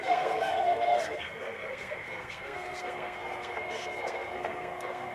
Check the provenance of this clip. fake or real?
fake